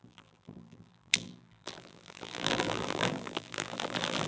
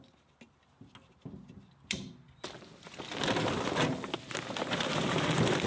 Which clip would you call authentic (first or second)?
second